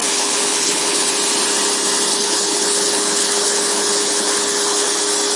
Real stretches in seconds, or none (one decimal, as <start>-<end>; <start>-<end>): 1.1-2.1; 5.0-5.4